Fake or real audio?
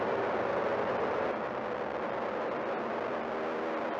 fake